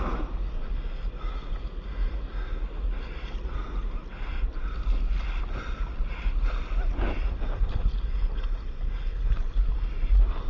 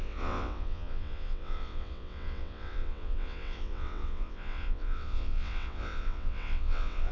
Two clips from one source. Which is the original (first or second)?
first